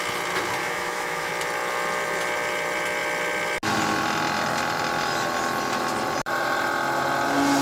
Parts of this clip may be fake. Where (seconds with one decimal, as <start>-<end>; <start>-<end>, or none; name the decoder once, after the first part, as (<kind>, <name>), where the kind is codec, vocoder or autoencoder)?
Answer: 0.6-1.3 (autoencoder, DAC-VAE)